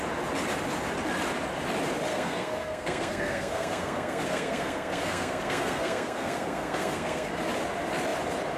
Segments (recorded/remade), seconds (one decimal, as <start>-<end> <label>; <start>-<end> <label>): 0.0-2.1 recorded; 2.1-7.3 remade; 7.3-8.6 recorded